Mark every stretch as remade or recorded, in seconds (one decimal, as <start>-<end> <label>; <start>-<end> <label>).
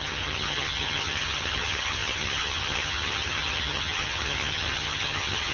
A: 0.0-5.5 remade